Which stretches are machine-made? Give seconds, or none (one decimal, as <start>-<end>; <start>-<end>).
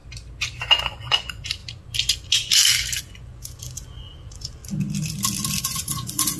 0.8-1.6; 3.0-4.6; 5.6-6.4